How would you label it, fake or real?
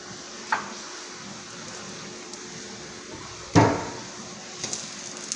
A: real